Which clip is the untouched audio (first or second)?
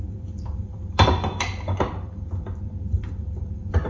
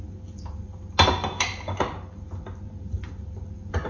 second